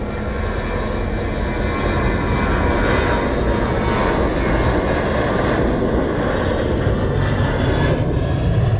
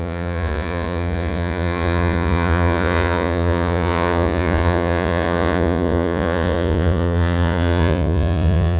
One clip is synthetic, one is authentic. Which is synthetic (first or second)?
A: second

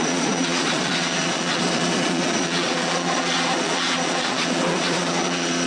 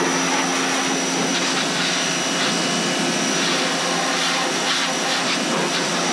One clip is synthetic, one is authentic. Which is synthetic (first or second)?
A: first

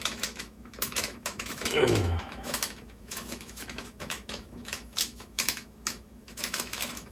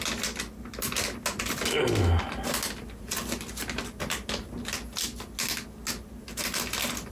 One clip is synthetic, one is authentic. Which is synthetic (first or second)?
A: first